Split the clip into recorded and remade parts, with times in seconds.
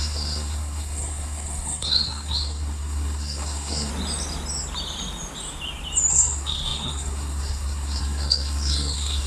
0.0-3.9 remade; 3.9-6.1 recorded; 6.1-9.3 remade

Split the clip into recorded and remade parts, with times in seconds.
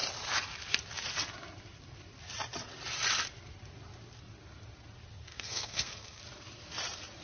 0.0-5.3 recorded; 5.3-6.2 remade; 6.2-7.2 recorded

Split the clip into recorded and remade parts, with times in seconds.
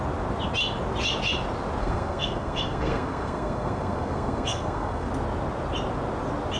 0.0-1.8 recorded; 1.8-5.1 remade; 5.1-6.6 recorded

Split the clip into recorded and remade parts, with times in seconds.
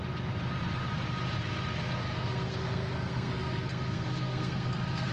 0.0-2.0 recorded; 2.0-5.1 remade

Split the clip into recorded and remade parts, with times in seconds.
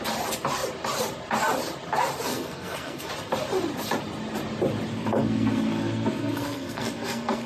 0.0-2.3 recorded; 2.3-3.1 remade; 3.1-4.9 recorded; 4.9-7.5 remade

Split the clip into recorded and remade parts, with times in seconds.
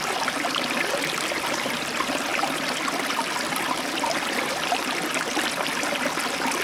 0.0-6.6 recorded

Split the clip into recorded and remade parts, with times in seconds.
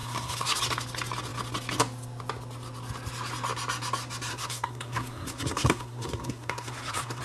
0.0-0.6 remade; 0.6-4.3 recorded; 4.3-7.2 remade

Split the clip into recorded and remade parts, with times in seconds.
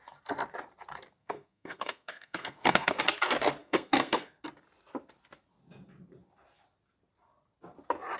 0.0-1.2 recorded; 1.2-3.0 remade; 3.0-3.6 recorded; 3.6-4.4 remade; 4.4-8.2 recorded